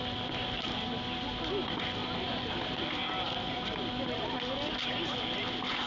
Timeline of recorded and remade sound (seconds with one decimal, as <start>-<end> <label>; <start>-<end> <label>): 0.0-2.0 recorded; 2.0-3.9 remade; 3.9-5.9 recorded